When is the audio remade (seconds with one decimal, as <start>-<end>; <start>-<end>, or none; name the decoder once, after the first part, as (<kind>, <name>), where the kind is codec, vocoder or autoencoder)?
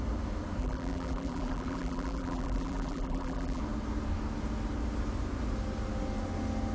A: 0.6-3.6 (vocoder, BigVGAN v2)